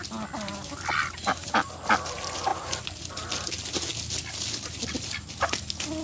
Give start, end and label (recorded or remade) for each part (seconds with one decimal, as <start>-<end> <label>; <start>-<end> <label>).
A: 0.0-6.0 recorded